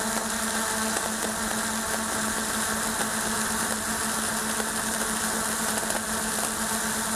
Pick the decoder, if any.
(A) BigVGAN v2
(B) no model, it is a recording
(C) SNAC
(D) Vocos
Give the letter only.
B